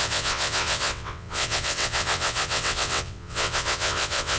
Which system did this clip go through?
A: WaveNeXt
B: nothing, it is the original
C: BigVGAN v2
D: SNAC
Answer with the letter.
A